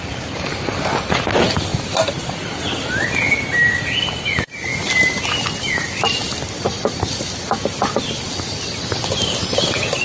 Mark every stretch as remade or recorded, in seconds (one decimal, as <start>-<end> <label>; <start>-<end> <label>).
0.0-10.0 recorded